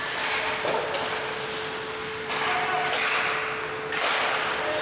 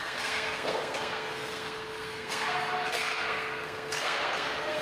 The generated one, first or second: second